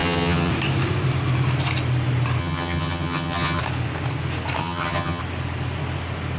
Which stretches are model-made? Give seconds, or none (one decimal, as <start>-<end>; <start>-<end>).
0.0-0.5; 2.4-3.6; 4.6-5.2